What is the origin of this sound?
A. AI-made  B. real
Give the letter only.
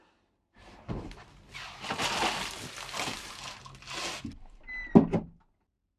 B